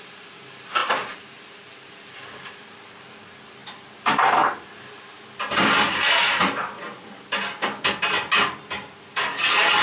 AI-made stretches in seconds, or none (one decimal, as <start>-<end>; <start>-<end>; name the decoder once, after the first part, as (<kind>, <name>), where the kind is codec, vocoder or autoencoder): 0.8-1.9 (vocoder, BigVGAN v2); 6.2-6.8